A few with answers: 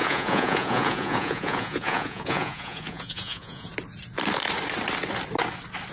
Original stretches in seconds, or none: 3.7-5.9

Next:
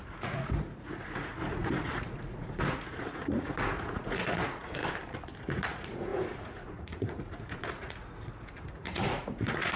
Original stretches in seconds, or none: 4.8-5.4